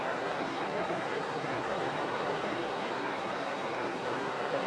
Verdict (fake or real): fake